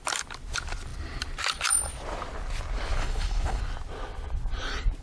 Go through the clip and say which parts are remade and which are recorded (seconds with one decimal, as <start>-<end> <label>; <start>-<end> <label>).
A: 0.0-3.0 recorded; 3.0-3.6 remade; 3.6-5.0 recorded